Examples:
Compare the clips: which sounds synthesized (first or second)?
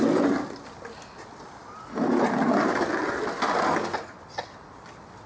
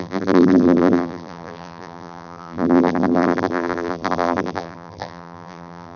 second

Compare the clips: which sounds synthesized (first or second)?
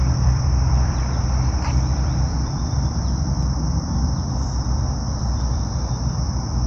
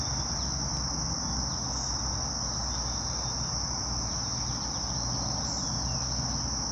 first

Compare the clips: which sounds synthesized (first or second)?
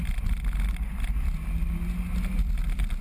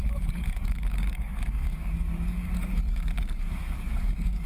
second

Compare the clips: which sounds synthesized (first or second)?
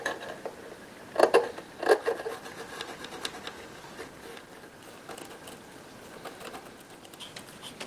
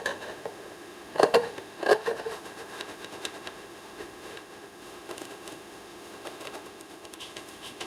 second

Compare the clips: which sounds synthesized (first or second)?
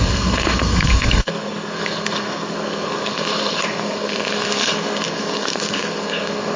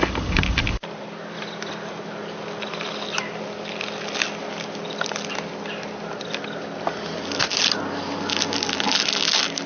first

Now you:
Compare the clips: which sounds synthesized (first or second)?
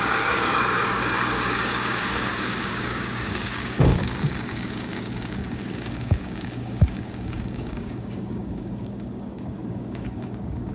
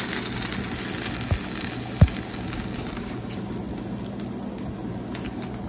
first